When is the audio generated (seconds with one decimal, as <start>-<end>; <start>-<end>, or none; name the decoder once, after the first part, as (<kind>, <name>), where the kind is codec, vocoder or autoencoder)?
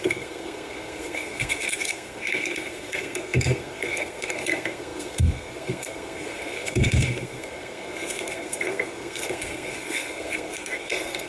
0.0-11.3 (codec, SNAC)